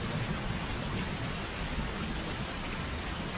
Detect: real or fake real